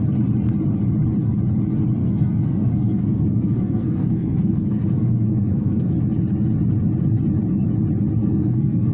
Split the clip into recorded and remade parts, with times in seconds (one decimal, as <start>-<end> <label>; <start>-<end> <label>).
0.0-2.0 recorded; 2.0-5.9 remade; 5.9-8.2 recorded; 8.2-8.9 remade